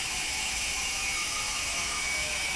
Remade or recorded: remade